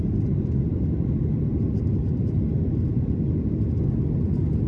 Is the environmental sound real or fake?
real